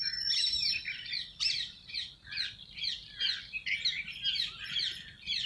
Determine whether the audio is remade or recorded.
recorded